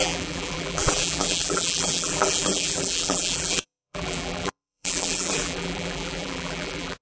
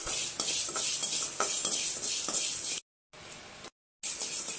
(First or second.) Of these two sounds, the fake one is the first